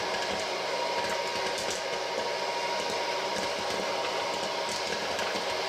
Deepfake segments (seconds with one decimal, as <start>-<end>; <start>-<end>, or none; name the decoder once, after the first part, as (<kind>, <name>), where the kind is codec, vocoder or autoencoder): 0.0-1.3 (vocoder, BigVGAN v2); 4.2-5.7